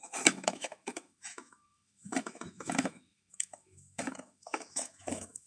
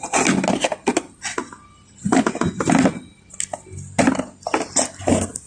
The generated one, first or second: first